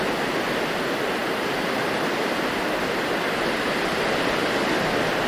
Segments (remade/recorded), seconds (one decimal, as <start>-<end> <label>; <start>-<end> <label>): 0.0-1.2 recorded; 1.2-4.0 remade; 4.0-4.4 recorded; 4.4-5.3 remade